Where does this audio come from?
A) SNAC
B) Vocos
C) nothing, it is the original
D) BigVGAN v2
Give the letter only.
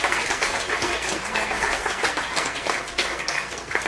A